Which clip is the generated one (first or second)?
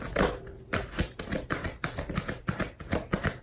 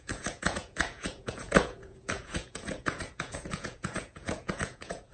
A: second